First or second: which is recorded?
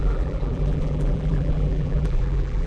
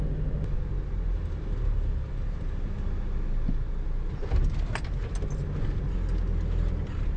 second